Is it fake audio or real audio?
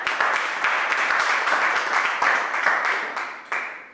fake